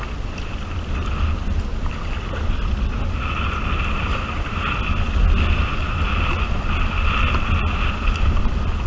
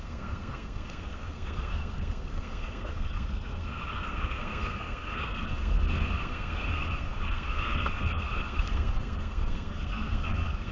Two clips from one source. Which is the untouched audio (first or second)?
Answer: first